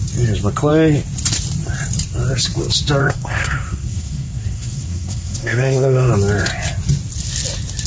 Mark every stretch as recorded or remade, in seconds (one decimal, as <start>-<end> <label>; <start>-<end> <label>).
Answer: 0.0-3.0 recorded; 3.0-6.1 remade; 6.1-7.9 recorded